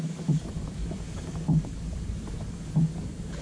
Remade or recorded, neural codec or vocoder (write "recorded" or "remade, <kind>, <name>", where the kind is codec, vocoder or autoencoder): remade, codec, DAC